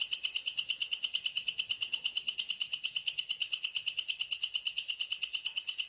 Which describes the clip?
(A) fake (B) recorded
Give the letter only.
B